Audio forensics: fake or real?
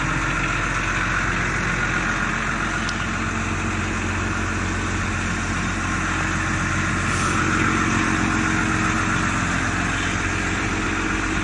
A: real